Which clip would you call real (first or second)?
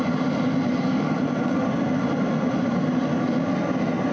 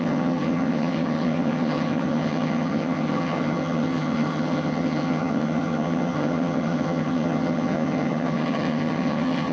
first